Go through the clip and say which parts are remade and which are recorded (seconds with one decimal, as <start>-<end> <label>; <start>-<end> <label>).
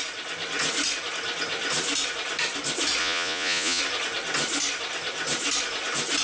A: 0.0-3.0 recorded; 3.0-3.8 remade; 3.8-6.2 recorded